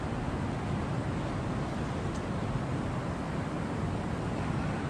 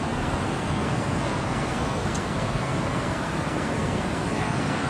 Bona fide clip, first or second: first